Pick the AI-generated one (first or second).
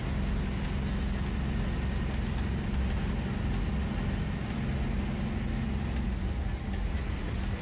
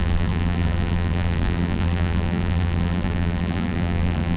second